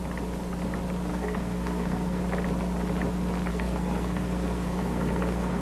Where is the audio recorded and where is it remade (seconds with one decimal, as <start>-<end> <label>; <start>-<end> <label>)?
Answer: 0.0-1.1 recorded; 1.1-2.2 remade; 2.2-3.5 recorded; 3.5-5.6 remade